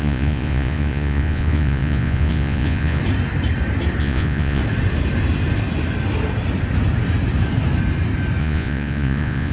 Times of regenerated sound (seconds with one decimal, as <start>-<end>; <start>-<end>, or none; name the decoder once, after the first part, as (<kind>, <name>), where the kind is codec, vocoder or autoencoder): 0.0-3.0 (vocoder, Vocos); 4.0-4.6; 8.4-9.5